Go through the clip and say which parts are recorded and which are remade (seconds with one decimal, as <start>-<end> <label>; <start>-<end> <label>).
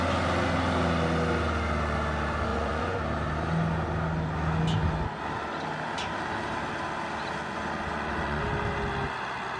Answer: 0.0-2.5 recorded; 2.5-3.0 remade; 3.0-7.4 recorded; 7.4-8.4 remade; 8.4-9.6 recorded